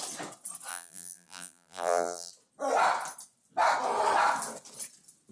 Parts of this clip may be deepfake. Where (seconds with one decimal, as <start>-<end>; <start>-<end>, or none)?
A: 0.7-2.3